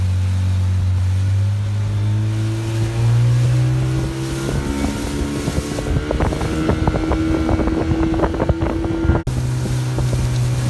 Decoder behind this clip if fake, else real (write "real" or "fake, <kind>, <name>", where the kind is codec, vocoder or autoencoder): real